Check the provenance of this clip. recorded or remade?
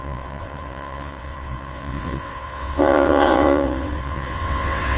remade